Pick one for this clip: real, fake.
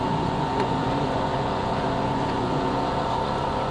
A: fake